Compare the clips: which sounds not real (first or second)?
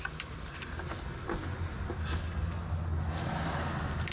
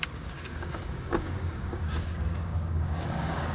second